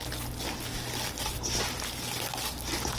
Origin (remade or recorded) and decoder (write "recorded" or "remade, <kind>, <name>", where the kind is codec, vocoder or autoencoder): recorded